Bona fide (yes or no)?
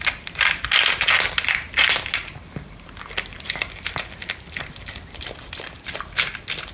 yes